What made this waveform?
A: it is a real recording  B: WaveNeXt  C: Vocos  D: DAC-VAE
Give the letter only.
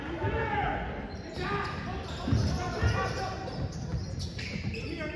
A